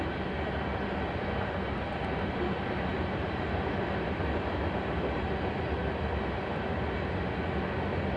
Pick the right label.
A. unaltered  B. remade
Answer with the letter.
A